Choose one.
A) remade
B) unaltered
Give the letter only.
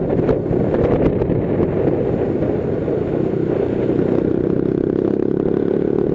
B